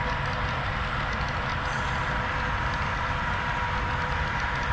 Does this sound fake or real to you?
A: real